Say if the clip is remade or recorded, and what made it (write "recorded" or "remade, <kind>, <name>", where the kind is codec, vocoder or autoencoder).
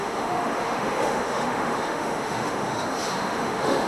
remade, autoencoder, DAC-VAE